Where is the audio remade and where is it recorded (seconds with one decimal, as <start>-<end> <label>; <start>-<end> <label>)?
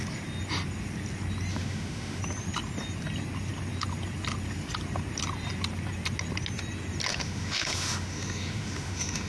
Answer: 0.0-1.5 recorded; 1.5-2.2 remade; 2.2-7.1 recorded; 7.1-9.3 remade